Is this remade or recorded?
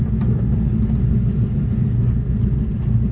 recorded